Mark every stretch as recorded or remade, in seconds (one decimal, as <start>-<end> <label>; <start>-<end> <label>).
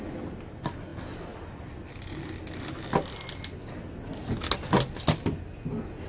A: 0.0-6.1 recorded